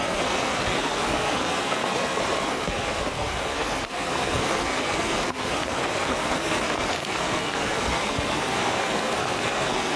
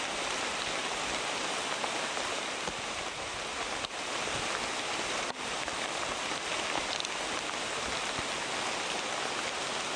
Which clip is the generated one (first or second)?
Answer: first